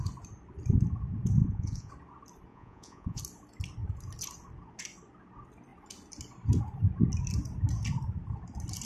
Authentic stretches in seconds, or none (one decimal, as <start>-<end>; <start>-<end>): 0.0-1.4; 1.9-2.5; 3.2-8.9

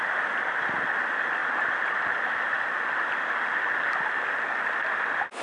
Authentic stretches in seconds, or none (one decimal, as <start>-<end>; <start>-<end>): 1.4-4.6

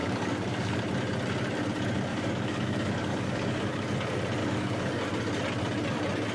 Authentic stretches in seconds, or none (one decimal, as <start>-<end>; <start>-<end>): 0.8-2.1; 3.8-4.4; 5.0-6.3

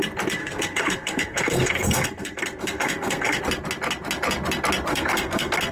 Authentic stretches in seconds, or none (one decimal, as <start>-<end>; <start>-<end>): 0.0-0.4; 3.4-4.9

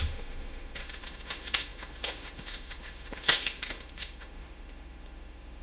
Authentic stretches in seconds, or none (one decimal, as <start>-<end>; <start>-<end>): none

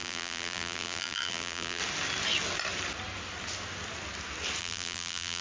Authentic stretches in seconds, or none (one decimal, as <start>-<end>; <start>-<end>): 1.8-4.6

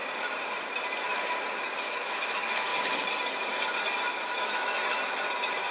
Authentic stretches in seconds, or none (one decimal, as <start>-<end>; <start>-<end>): 0.0-1.9; 2.7-4.3; 4.8-5.7

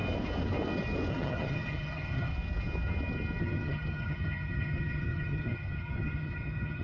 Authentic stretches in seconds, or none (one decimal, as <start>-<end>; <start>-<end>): 0.0-1.1; 2.3-3.4